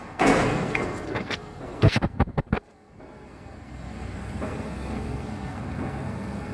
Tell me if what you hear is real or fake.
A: fake